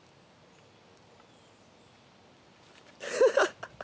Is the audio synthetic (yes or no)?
no